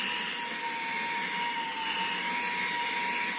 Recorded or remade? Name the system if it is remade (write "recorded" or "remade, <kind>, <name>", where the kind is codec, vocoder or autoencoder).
recorded